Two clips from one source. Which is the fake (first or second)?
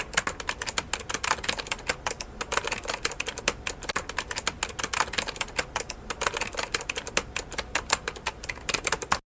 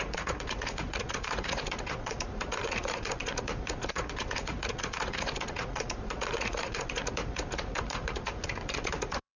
second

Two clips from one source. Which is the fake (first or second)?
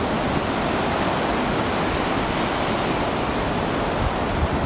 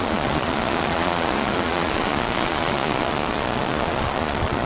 second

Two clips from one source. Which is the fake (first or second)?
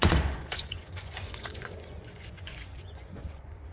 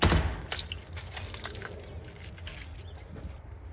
first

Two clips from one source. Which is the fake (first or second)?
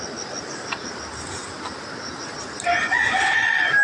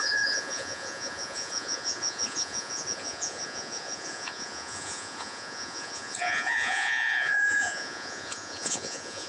second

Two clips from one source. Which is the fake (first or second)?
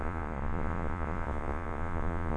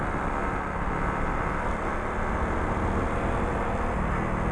first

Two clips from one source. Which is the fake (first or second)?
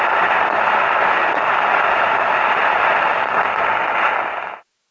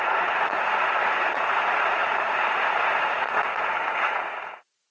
second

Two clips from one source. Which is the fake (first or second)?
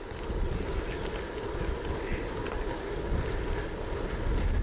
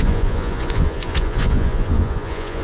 second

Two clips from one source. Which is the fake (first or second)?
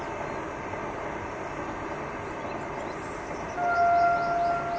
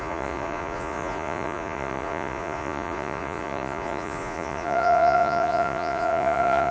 second